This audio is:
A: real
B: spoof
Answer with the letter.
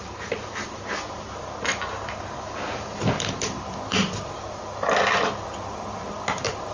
A